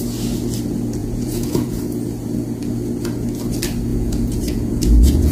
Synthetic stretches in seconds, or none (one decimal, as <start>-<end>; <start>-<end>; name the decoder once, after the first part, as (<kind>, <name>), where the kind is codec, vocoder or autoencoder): 1.0-1.8 (vocoder, Vocos); 3.9-5.3